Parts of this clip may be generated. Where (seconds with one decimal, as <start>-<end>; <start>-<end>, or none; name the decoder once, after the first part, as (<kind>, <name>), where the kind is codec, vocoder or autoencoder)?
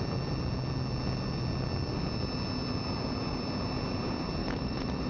4.4-5.1 (autoencoder, DAC-VAE)